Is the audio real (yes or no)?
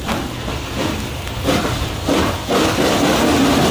yes